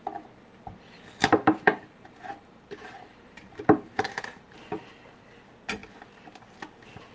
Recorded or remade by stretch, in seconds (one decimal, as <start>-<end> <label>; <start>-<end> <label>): 0.0-1.2 recorded; 1.2-5.2 remade; 5.2-7.1 recorded